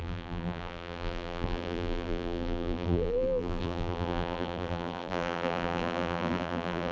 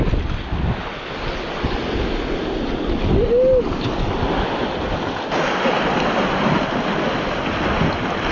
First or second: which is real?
second